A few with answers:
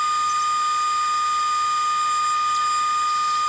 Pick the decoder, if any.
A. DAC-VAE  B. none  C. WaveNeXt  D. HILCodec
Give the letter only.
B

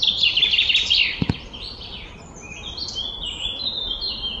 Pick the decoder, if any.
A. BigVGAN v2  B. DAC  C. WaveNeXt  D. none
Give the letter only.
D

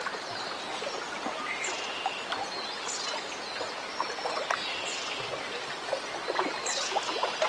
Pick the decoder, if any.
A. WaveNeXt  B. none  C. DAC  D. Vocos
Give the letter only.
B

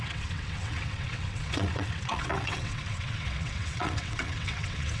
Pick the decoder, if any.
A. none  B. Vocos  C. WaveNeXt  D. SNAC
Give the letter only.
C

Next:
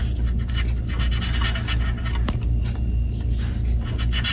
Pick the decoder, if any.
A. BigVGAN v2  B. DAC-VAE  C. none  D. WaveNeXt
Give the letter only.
C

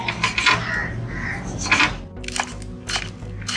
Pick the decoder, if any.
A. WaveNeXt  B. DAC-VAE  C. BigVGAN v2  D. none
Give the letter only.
D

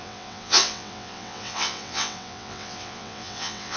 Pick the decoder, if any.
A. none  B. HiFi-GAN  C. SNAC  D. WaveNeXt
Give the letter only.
D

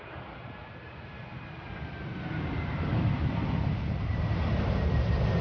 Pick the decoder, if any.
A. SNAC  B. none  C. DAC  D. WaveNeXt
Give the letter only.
B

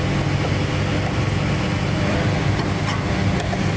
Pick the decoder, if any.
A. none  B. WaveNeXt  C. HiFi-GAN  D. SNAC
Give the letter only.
A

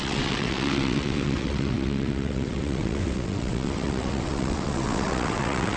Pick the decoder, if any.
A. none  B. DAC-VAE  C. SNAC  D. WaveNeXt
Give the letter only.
D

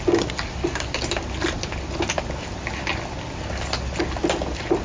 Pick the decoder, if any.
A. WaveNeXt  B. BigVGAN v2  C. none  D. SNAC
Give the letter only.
C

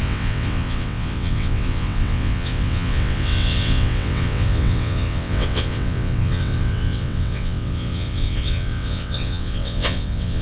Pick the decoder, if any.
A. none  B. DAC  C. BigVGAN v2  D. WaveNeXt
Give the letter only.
D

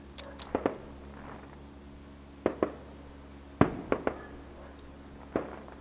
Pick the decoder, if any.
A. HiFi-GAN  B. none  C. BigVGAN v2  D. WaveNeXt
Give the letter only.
B